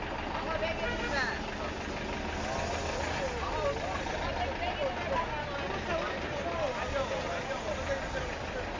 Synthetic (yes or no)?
no